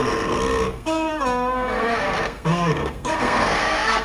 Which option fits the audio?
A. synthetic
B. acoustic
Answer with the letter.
A